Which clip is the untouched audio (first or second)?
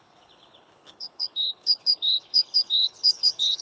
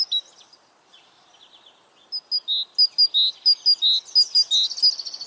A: second